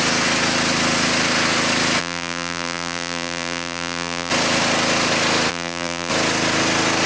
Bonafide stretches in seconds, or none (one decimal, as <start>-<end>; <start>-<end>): 0.0-2.0; 4.3-5.5; 6.1-7.1

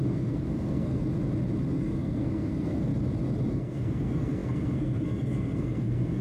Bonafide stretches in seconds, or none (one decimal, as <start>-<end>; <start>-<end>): 1.0-1.8; 2.9-3.5

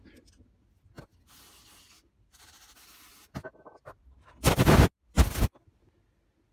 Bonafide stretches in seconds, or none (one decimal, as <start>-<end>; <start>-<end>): 0.0-6.5

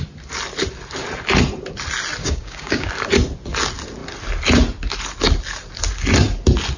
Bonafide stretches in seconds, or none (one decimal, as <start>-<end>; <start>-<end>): 0.0-2.2; 2.9-6.8